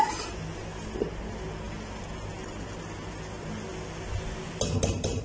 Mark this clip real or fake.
real